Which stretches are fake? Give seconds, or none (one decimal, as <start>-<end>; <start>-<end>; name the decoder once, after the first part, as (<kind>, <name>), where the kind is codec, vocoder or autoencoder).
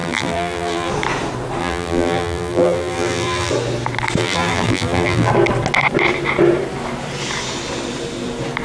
0.0-0.9 (vocoder, BigVGAN v2); 1.6-3.5; 4.2-5.3